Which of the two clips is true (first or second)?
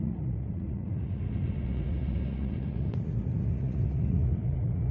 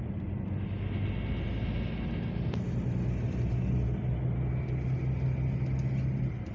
second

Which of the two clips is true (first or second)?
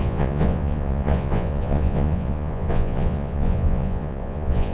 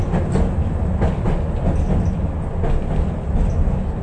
second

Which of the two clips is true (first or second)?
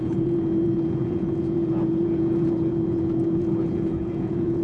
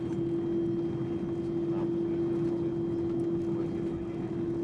second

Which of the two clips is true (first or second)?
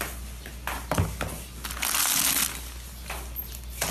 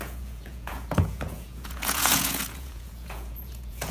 first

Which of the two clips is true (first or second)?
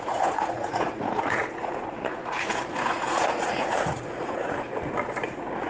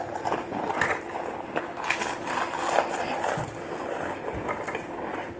second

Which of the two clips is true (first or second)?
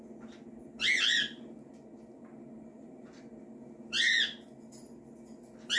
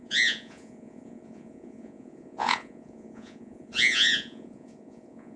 first